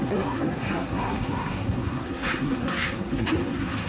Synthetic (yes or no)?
yes